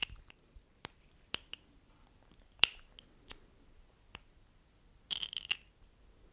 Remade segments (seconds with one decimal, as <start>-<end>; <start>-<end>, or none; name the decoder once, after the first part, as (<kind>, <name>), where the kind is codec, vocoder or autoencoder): 0.0-2.7 (vocoder, BigVGAN v2); 4.9-6.3